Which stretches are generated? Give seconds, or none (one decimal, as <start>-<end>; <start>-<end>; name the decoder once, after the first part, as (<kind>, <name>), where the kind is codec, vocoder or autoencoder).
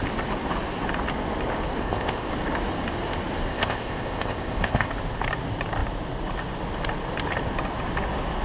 1.8-2.3 (codec, ZipCodec); 3.5-4.9